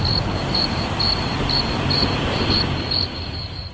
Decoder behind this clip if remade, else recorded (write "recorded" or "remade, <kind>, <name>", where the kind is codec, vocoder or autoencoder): remade, vocoder, BigVGAN v2